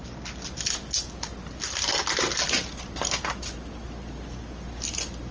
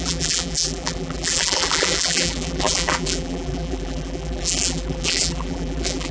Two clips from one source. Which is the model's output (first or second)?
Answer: second